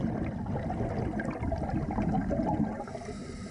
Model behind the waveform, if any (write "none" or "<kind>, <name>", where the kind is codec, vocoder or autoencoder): none